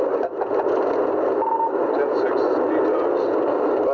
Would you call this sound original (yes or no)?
yes